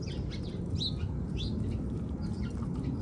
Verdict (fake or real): real